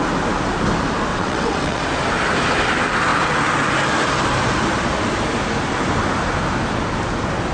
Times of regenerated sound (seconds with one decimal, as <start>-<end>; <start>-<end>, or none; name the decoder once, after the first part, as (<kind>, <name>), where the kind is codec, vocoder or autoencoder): 1.1-1.8 (vocoder, WaveNeXt)